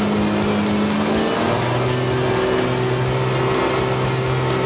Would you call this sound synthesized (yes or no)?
no